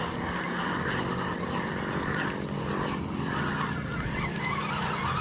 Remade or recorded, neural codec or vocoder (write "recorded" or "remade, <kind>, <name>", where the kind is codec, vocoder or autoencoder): recorded